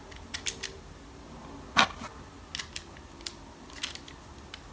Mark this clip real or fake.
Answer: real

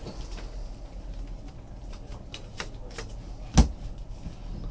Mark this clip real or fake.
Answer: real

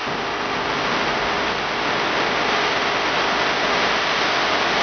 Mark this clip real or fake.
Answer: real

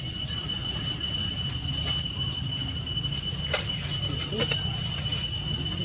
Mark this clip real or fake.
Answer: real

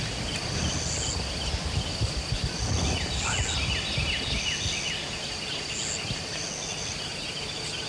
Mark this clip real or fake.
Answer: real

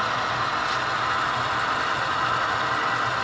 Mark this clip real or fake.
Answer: real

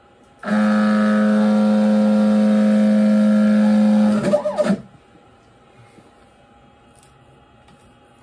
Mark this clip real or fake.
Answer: real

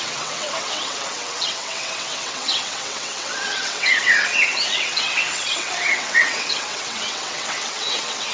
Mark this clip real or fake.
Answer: fake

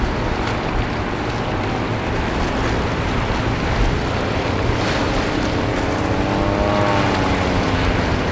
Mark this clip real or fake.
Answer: real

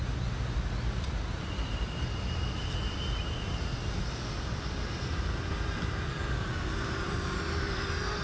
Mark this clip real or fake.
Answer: real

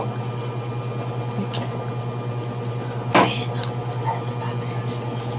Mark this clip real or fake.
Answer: real